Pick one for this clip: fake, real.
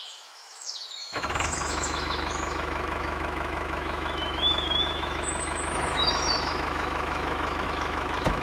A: fake